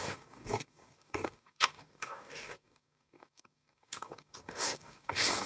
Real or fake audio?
fake